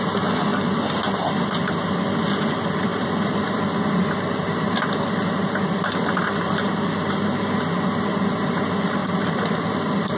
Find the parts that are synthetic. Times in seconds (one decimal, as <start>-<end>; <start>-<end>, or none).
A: 2.9-7.1; 9.0-10.2